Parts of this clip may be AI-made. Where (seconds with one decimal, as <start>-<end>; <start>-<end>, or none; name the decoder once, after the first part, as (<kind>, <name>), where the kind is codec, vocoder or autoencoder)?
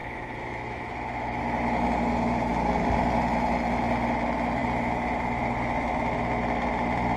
0.0-1.4 (autoencoder, DAC-VAE)